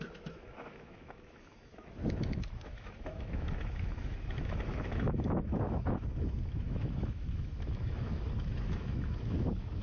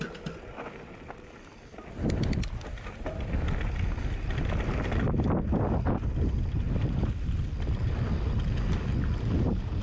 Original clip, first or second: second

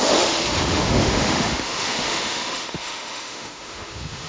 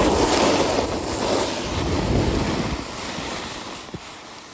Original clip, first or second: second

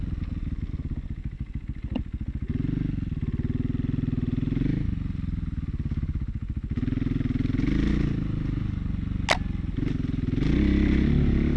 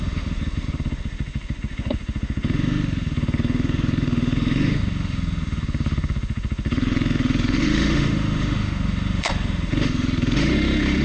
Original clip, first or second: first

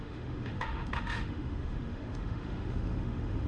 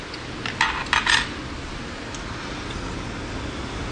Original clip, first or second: second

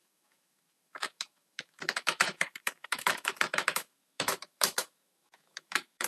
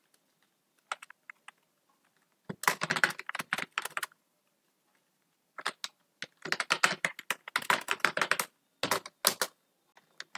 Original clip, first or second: second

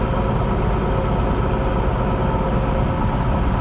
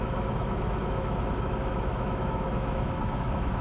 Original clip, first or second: first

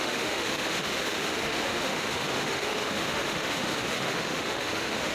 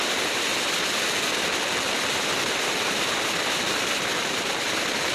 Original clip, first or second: second